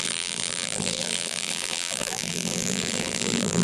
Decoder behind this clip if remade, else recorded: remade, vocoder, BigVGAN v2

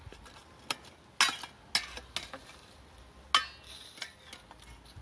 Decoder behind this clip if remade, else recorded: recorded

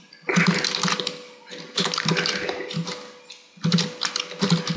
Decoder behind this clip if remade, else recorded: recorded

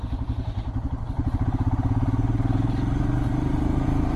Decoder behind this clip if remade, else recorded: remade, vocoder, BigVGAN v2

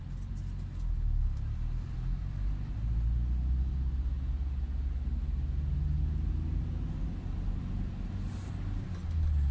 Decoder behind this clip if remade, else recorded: recorded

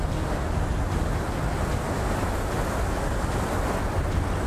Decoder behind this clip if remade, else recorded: recorded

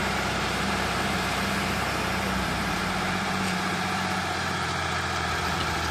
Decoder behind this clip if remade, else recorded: remade, vocoder, BigVGAN v2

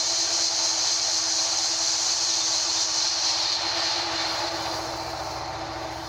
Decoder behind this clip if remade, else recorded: recorded